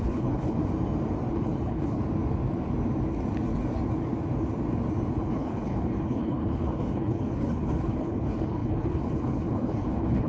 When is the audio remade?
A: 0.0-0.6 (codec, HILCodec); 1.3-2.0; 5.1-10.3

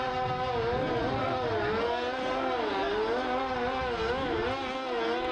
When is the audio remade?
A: none

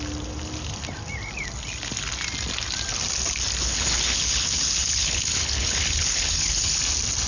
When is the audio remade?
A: 3.6-6.8 (codec, HILCodec)

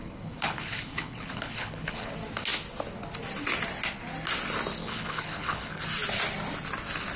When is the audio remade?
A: 0.0-2.1 (codec, HILCodec); 4.8-5.8